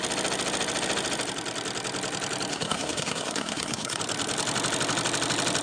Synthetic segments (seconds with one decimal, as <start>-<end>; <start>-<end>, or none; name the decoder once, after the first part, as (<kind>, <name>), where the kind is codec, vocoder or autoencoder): 2.5-4.0 (codec, SNAC)